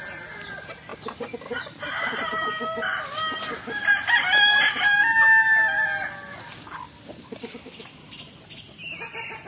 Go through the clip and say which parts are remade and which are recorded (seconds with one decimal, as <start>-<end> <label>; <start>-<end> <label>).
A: 0.0-9.5 recorded

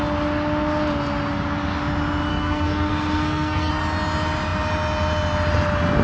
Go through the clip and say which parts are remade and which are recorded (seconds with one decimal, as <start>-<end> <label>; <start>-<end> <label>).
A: 0.0-2.3 recorded; 2.3-3.7 remade; 3.7-6.0 recorded

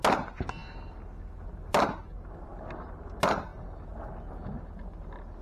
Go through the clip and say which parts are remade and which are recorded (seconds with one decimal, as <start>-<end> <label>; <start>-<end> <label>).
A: 0.0-5.4 recorded

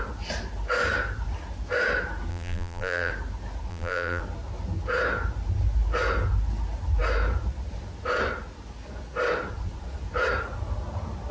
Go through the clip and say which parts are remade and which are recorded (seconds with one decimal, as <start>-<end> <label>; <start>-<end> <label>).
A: 0.0-2.3 recorded; 2.3-3.1 remade; 3.1-3.7 recorded; 3.7-4.2 remade; 4.2-11.3 recorded

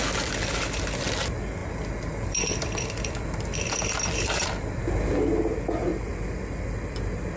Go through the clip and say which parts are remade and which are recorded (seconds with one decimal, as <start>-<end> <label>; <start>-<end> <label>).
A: 0.0-1.6 recorded; 1.6-4.8 remade; 4.8-5.9 recorded; 5.9-7.4 remade

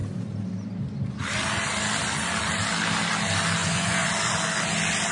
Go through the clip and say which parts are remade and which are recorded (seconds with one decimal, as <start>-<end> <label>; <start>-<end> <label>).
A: 0.0-3.6 recorded; 3.6-4.1 remade; 4.1-5.1 recorded

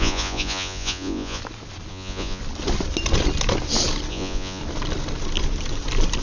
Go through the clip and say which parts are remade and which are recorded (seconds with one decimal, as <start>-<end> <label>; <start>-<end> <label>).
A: 0.0-1.4 remade; 1.4-1.9 recorded; 1.9-2.4 remade; 2.4-4.1 recorded; 4.1-4.6 remade; 4.6-6.2 recorded

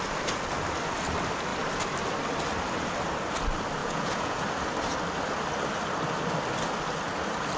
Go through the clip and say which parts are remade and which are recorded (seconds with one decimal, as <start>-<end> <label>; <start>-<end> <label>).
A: 0.0-3.8 recorded; 3.8-4.4 remade; 4.4-7.6 recorded